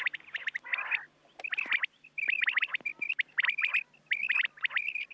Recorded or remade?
recorded